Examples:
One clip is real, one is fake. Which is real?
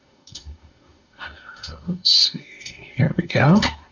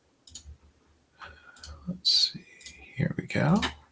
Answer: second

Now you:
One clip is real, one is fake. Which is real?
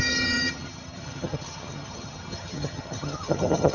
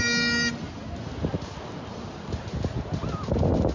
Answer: second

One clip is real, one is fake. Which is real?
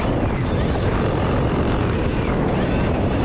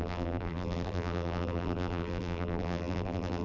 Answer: first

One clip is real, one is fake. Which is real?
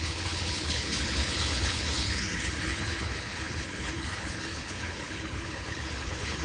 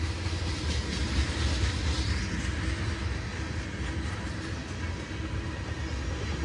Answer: second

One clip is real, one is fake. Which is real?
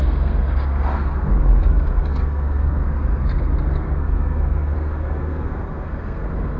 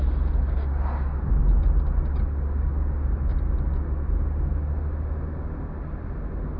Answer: second